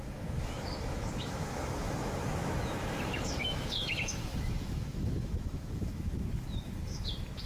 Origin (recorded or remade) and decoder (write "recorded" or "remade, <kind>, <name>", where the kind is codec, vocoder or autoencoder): remade, autoencoder, DAC-VAE